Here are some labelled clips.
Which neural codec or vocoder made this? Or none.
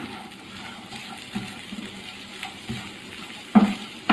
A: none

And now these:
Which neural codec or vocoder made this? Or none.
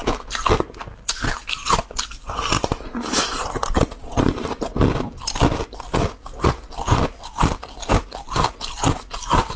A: none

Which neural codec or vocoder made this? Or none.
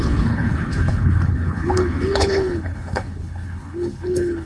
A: codec, HILCodec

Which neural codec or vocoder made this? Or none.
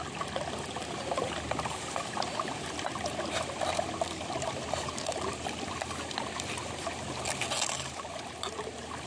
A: none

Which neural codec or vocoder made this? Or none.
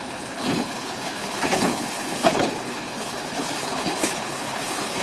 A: codec, HILCodec